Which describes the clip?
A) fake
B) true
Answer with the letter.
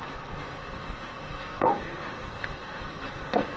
A